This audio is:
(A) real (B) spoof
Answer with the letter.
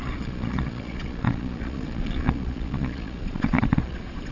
B